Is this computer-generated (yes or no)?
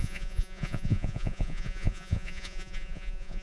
yes